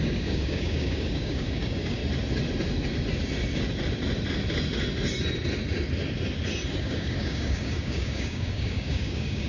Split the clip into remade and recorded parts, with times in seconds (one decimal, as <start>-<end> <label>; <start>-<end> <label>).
0.0-2.0 remade; 2.0-6.8 recorded; 6.8-9.5 remade